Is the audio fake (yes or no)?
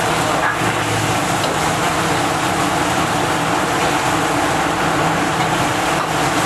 no